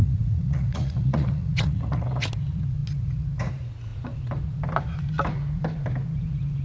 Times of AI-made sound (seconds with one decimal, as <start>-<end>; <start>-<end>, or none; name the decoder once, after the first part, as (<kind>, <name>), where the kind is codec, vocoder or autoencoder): 0.0-2.3 (vocoder, Vocos)